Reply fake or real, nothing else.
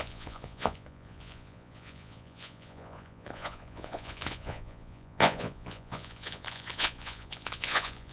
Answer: fake